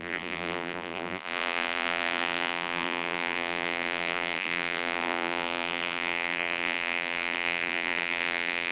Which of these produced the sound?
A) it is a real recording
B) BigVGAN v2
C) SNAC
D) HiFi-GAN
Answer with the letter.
B